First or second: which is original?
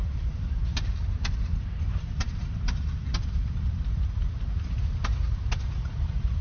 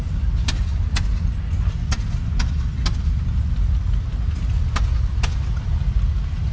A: second